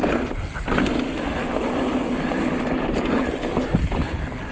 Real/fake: real